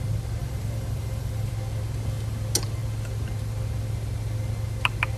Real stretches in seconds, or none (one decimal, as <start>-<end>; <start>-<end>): 0.0-0.4; 1.5-5.2

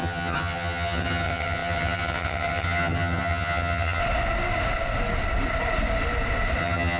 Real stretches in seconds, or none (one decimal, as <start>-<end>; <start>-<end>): 4.0-6.6

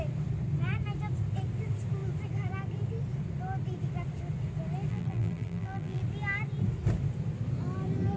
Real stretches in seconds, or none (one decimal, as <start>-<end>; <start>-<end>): 0.0-4.9; 6.0-8.2

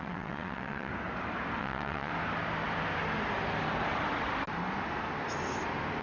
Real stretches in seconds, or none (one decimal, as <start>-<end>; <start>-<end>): 0.9-1.6; 2.1-6.0

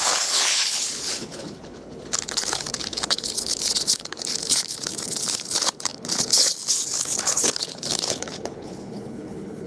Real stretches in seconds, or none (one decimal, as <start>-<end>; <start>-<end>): none

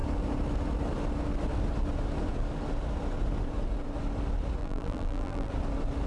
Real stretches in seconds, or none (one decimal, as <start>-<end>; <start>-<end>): 0.0-4.6; 5.5-6.1

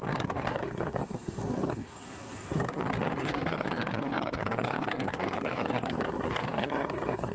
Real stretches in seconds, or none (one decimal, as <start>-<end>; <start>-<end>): none

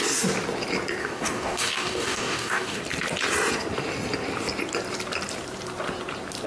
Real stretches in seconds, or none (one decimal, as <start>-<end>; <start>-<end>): 0.0-1.0; 2.8-6.5